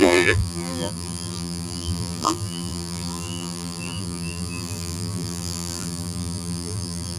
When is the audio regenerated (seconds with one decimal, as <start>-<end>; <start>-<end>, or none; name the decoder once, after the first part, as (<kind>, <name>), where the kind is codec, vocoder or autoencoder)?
0.0-7.2 (vocoder, BigVGAN v2)